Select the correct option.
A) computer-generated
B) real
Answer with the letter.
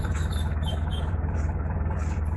A